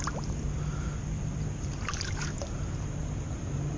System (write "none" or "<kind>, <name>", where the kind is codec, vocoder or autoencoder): vocoder, BigVGAN v2